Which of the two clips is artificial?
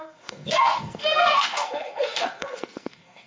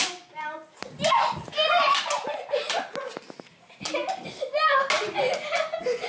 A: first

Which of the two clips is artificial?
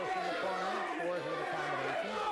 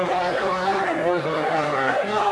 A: second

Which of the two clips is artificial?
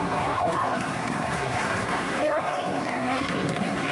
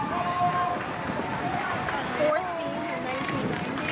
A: first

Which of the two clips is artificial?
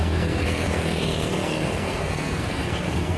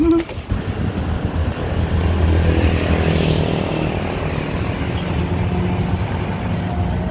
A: first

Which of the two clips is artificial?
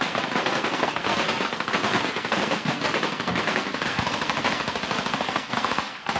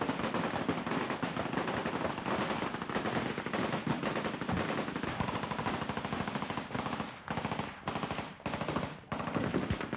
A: first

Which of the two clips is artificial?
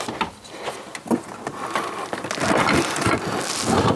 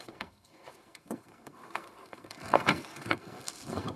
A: second